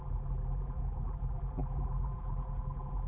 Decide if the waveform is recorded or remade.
remade